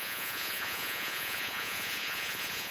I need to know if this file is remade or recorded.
remade